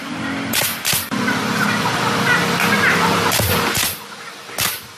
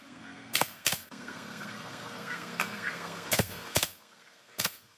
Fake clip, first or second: second